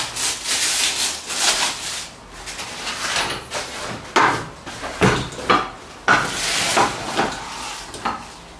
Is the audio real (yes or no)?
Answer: yes